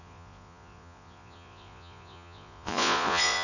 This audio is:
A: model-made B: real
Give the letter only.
A